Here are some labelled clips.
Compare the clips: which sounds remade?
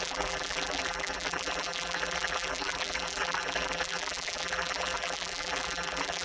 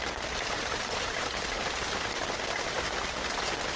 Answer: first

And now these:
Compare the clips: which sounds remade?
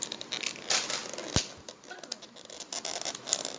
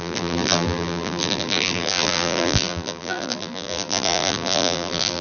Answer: second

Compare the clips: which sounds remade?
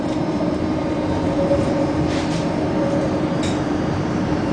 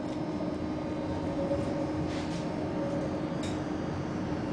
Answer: first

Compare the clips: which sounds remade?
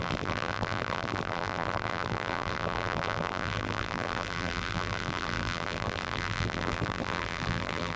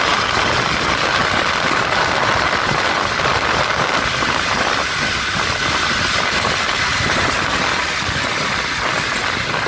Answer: first